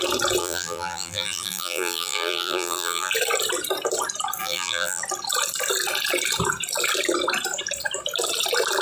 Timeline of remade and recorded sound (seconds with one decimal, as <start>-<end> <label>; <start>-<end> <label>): 0.0-0.4 recorded; 0.4-3.1 remade; 3.1-4.4 recorded; 4.4-5.0 remade; 5.0-8.8 recorded